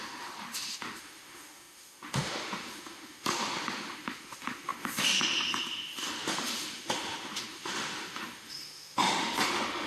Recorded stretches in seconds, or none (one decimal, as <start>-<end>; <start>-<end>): none